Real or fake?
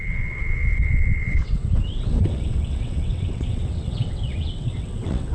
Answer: fake